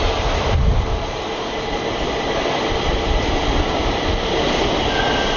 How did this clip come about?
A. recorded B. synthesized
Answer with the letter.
A